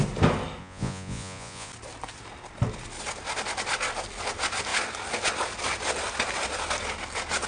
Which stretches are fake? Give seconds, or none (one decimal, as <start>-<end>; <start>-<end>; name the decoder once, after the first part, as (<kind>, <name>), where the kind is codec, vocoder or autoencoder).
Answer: 0.6-1.7 (vocoder, Vocos)